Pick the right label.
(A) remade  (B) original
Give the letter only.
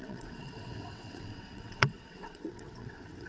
A